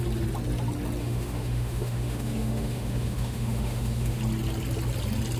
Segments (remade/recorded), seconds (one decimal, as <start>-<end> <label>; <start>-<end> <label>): 0.0-1.0 recorded; 1.0-4.2 remade; 4.2-5.4 recorded